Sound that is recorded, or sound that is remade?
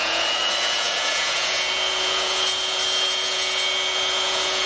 remade